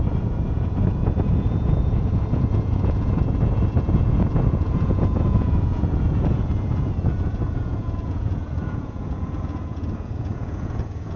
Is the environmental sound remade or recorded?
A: remade